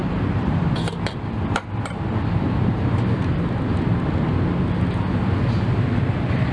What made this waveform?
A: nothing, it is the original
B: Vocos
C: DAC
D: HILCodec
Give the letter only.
A